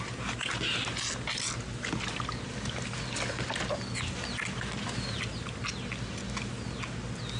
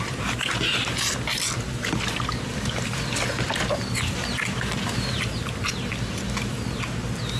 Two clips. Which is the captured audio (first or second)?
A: first